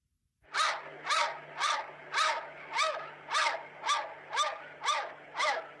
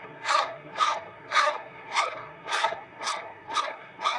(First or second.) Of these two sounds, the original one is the first